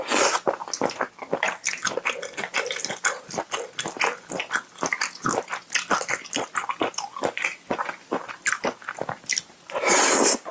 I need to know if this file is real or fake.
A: real